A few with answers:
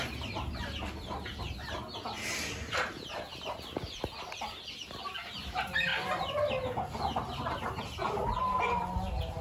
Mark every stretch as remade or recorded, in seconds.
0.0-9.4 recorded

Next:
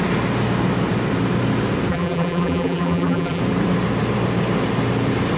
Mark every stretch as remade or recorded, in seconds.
0.0-1.9 recorded; 1.9-3.4 remade; 3.4-5.4 recorded

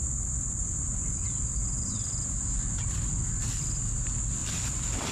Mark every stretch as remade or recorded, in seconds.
0.0-0.6 recorded; 0.6-2.7 remade; 2.7-4.4 recorded; 4.4-5.1 remade

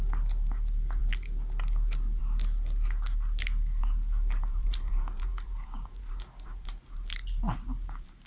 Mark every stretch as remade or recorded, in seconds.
0.0-3.8 recorded; 3.8-8.3 remade